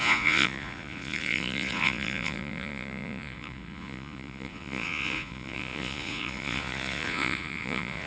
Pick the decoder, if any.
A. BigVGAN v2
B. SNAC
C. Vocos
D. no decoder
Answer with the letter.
C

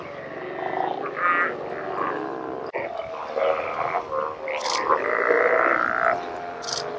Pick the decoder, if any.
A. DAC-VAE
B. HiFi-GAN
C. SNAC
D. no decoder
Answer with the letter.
D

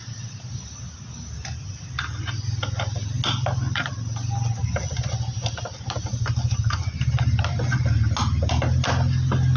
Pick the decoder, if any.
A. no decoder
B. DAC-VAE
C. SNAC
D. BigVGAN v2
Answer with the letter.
A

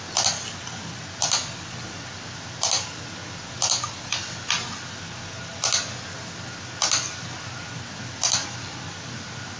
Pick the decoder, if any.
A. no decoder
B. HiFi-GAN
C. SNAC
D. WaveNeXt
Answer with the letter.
A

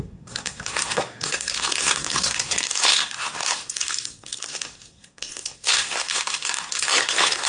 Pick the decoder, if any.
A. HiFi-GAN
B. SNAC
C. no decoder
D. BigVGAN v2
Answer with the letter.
B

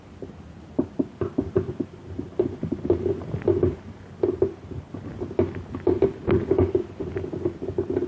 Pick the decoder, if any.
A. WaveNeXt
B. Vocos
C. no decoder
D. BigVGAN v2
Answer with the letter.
C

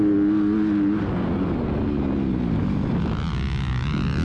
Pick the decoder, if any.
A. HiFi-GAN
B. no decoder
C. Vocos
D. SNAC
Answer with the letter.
B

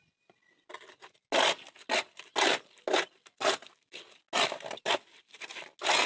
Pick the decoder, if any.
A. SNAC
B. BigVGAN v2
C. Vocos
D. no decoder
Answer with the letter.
D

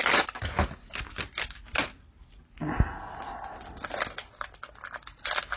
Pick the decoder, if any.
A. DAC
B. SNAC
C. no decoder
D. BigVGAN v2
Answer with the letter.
C